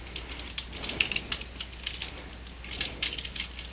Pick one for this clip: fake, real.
real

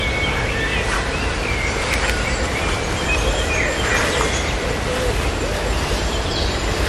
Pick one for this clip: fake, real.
real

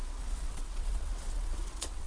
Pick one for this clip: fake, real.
fake